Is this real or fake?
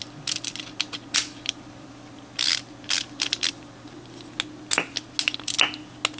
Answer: real